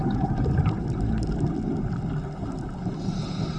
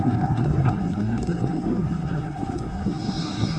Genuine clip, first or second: first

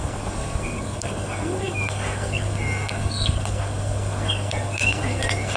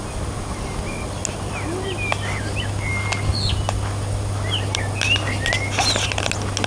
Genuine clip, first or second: second